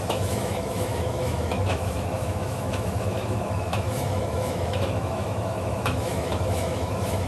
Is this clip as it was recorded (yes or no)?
no